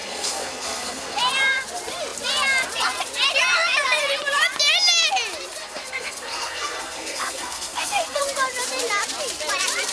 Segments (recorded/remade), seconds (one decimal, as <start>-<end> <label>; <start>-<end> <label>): 0.0-1.2 remade; 1.2-5.6 recorded; 5.6-8.2 remade; 8.2-9.9 recorded